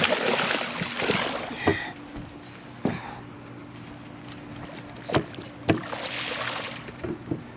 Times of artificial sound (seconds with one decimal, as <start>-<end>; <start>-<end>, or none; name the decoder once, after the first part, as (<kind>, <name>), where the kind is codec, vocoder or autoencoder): none